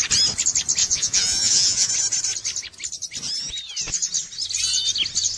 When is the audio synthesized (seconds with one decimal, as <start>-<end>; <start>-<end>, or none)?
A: 0.8-1.9